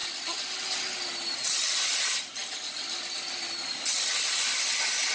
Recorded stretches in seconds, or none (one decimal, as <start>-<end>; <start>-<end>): 0.0-5.1